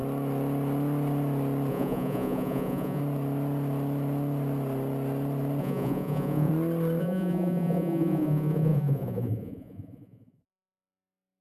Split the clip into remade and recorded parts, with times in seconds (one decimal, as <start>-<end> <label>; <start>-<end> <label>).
0.0-1.7 recorded; 1.7-3.0 remade; 3.0-5.6 recorded; 5.6-6.5 remade; 6.5-7.0 recorded; 7.0-11.4 remade